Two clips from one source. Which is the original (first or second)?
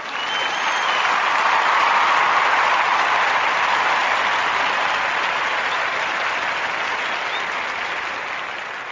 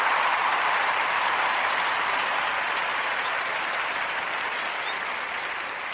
first